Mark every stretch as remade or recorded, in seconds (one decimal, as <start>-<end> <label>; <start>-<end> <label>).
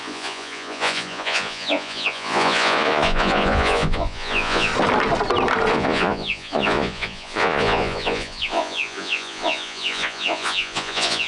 0.0-4.7 remade; 4.7-5.7 recorded; 5.7-11.3 remade